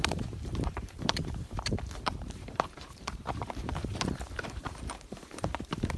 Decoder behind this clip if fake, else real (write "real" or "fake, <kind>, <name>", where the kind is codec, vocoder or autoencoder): fake, vocoder, BigVGAN v2